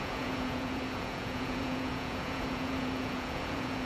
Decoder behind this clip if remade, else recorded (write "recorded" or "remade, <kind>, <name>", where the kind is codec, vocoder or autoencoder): remade, vocoder, Vocos